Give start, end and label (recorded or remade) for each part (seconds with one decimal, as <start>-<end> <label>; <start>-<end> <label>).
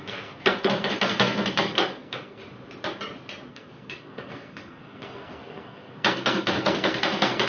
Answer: 0.0-2.4 remade; 2.4-3.5 recorded; 3.5-7.5 remade